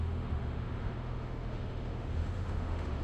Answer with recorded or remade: remade